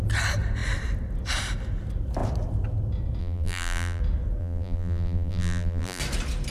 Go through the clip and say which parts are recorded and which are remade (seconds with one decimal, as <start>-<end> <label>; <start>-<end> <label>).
0.0-3.2 recorded; 3.2-4.0 remade; 4.0-4.4 recorded; 4.4-6.0 remade; 6.0-6.5 recorded

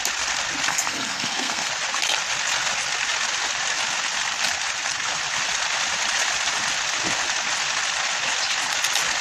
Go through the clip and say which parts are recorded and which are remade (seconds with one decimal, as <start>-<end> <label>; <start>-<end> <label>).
0.0-0.7 recorded; 0.7-1.7 remade; 1.7-9.2 recorded

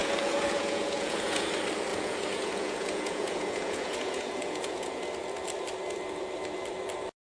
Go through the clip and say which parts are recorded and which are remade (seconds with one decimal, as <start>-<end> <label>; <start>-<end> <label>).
0.0-1.5 remade; 1.5-1.9 recorded; 1.9-5.0 remade; 5.0-7.3 recorded

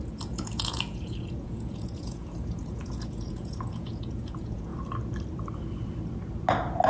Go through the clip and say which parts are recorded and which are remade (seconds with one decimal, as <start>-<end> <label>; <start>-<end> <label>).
0.0-4.7 remade; 4.7-6.9 recorded

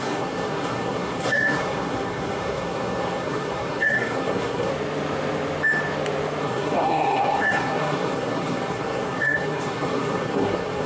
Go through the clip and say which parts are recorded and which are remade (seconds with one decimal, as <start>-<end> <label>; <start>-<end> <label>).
0.0-4.7 remade; 4.7-6.4 recorded; 6.4-10.9 remade

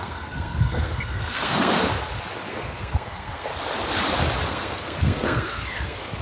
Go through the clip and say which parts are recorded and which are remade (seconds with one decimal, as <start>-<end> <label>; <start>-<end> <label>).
0.0-1.9 remade; 1.9-2.5 recorded; 2.5-3.5 remade; 3.5-4.5 recorded; 4.5-6.2 remade

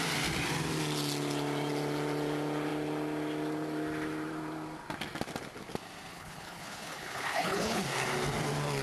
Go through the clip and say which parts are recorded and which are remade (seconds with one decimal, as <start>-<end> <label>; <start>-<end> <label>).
0.0-6.1 recorded; 6.1-7.8 remade; 7.8-8.8 recorded

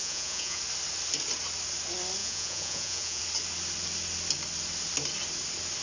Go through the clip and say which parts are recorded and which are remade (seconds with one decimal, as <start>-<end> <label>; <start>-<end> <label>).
0.0-0.6 remade; 0.6-2.2 recorded; 2.2-3.2 remade; 3.2-5.8 recorded